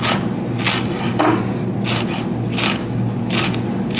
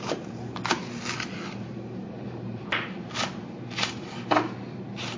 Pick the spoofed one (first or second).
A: second